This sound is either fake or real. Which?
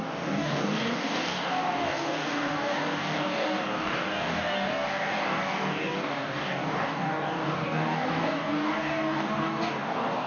fake